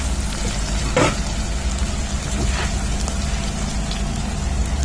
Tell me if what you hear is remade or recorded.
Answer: recorded